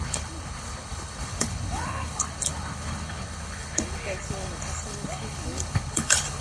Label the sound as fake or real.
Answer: fake